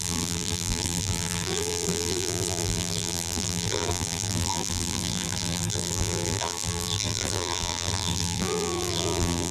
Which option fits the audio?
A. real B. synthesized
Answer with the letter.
B